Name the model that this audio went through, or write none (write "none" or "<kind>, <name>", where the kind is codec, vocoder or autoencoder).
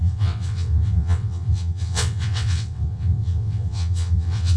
vocoder, WaveNeXt